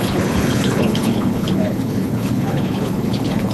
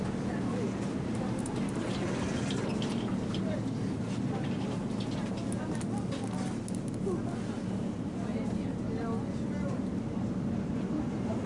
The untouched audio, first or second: second